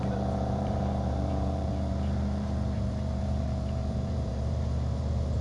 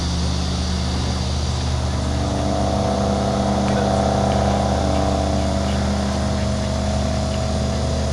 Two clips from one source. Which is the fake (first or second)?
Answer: first